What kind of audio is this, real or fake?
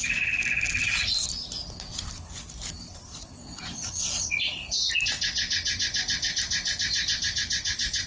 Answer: real